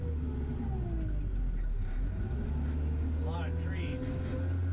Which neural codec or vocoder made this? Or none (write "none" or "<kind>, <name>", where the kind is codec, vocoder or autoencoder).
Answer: none